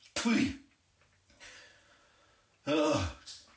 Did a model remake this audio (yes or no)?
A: no